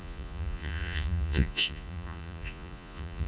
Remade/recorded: remade